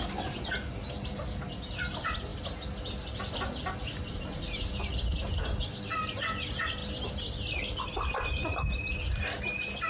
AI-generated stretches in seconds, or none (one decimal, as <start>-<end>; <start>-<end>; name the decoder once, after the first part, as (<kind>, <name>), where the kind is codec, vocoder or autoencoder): 8.5-9.2 (vocoder, BigVGAN v2)